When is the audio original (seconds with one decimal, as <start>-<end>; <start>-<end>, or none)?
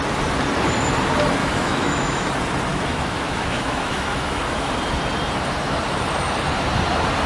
0.0-1.4; 2.3-2.7; 4.7-7.3